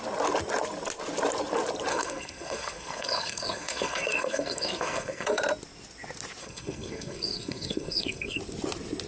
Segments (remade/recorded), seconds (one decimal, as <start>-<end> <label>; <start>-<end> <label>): 0.0-1.9 recorded; 1.9-5.4 remade; 5.4-6.4 recorded; 6.4-8.4 remade; 8.4-9.1 recorded